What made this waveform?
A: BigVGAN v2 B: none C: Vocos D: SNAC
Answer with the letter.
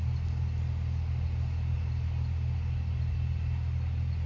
B